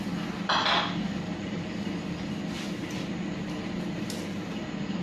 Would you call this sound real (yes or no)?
yes